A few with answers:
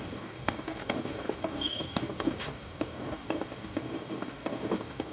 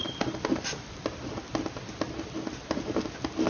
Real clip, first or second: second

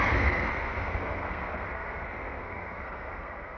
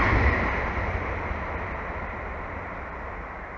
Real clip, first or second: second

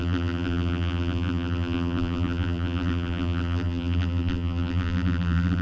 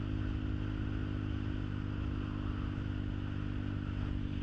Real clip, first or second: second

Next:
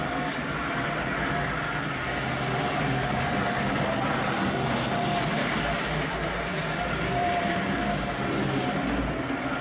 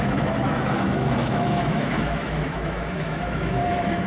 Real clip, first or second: first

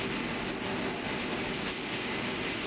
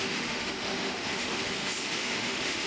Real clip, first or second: first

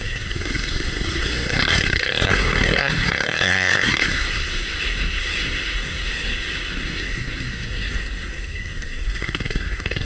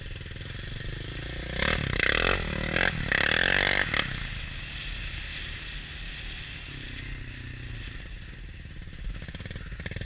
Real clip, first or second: second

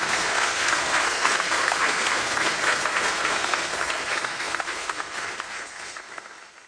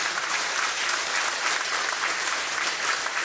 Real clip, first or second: second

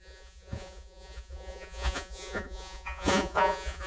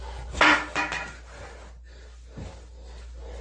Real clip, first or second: second